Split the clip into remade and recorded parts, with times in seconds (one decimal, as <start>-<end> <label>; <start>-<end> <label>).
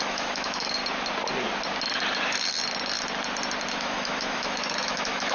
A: 0.0-0.8 remade; 0.8-3.7 recorded; 3.7-5.3 remade